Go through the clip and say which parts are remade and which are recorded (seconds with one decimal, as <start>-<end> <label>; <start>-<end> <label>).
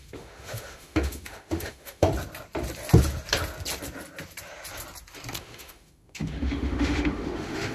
0.0-2.1 remade; 2.1-5.4 recorded; 5.4-7.7 remade